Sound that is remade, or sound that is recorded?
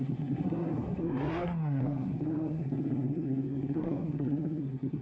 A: remade